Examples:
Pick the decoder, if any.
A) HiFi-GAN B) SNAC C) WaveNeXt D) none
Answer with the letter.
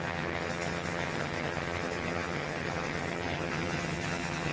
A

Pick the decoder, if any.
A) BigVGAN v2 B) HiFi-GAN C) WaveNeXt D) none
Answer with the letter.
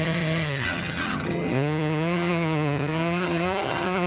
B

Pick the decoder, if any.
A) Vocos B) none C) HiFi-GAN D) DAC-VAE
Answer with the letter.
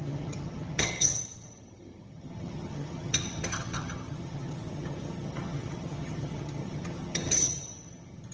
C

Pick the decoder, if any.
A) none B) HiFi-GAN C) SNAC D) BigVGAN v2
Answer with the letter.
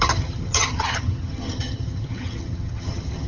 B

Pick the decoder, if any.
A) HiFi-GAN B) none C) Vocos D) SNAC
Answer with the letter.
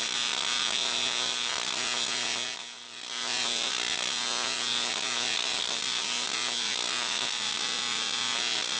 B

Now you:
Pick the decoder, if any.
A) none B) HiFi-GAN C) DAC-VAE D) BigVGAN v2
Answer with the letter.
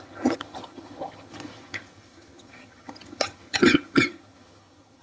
B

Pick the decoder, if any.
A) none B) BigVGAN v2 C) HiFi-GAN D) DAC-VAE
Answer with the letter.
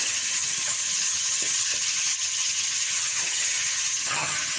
C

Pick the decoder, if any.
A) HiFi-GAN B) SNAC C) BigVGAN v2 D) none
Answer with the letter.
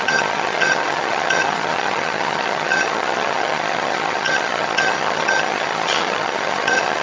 A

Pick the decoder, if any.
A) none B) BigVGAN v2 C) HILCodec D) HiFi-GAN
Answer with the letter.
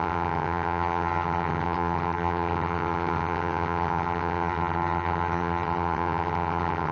D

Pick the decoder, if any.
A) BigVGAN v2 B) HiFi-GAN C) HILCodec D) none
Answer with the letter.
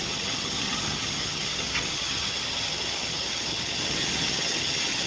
B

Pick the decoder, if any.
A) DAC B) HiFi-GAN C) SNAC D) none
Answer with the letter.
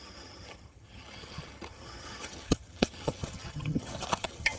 B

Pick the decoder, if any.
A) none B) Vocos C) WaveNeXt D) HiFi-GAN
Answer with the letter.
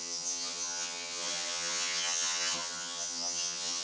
D